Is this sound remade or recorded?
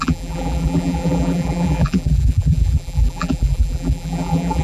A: remade